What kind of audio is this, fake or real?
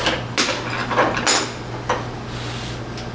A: real